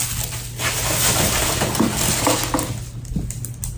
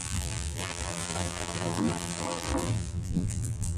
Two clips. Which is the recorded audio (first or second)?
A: first